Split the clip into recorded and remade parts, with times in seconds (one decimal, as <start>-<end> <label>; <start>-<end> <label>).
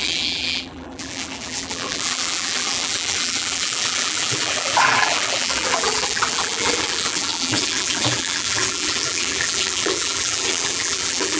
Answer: 0.0-11.4 remade